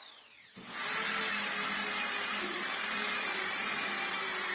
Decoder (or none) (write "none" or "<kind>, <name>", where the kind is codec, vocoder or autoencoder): none